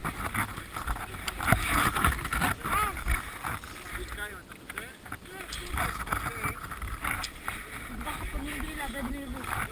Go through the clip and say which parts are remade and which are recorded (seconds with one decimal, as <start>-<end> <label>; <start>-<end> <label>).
0.0-9.7 recorded

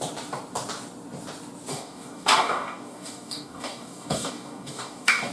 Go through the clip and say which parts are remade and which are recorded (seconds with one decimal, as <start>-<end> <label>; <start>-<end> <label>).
0.0-1.7 recorded; 1.7-5.3 remade